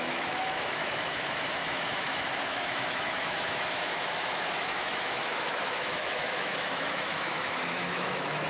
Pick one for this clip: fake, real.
fake